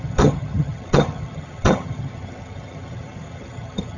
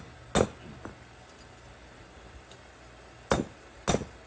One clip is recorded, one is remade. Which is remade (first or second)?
first